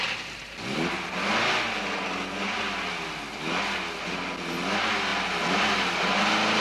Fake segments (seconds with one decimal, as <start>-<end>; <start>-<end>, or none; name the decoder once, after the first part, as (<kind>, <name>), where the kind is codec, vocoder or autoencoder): none